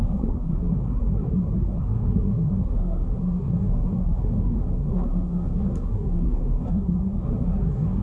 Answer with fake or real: fake